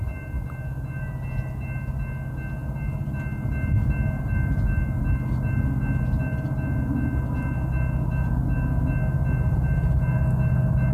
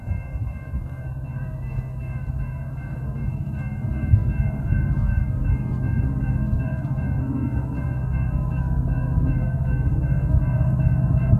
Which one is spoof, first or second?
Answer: second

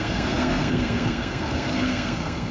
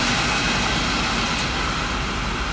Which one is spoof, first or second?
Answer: first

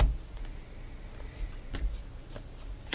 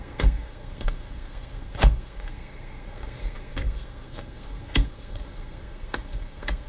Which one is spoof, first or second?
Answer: second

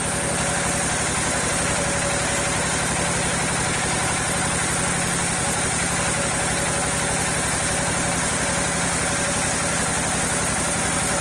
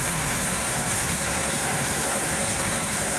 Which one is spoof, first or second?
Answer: second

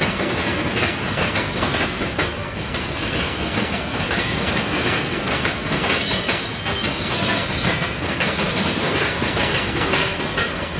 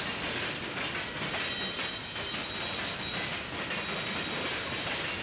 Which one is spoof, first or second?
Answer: first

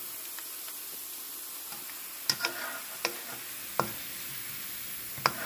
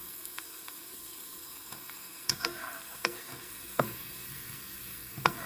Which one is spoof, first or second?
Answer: second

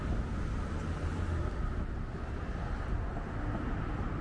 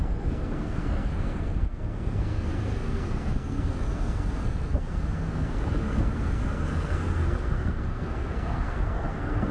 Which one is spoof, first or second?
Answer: second